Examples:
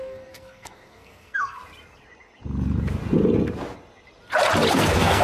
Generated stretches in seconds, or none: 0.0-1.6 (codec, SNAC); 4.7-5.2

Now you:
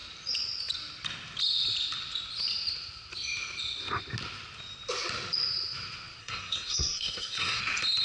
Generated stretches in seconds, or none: 6.2-7.6 (codec, SNAC)

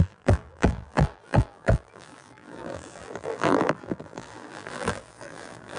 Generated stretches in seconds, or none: 0.0-5.8 (vocoder, BigVGAN v2)

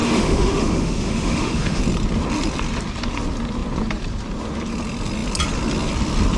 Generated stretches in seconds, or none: 0.0-1.8 (autoencoder, DAC-VAE)

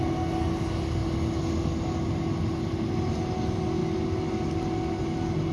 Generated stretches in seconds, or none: none

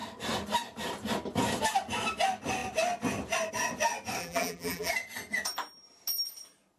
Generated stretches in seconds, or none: 4.2-4.9 (vocoder, BigVGAN v2)